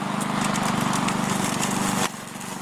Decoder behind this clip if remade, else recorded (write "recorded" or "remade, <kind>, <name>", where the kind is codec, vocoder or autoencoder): recorded